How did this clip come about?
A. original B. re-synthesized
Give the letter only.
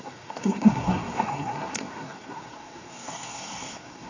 B